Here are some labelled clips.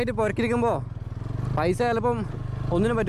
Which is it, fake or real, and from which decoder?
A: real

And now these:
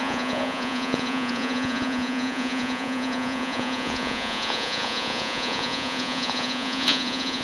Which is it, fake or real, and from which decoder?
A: fake, vocoder, Vocos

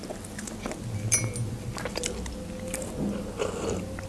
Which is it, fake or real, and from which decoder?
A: real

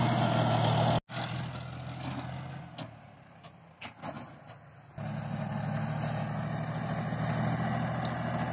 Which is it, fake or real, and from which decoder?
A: real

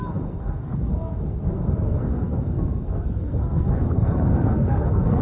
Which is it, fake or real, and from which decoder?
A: fake, codec, SNAC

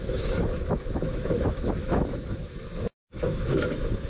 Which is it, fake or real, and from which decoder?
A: fake, autoencoder, DAC-VAE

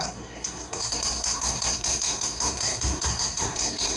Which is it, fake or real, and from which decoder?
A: fake, codec, SNAC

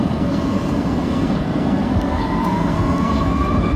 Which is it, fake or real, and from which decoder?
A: fake, codec, SNAC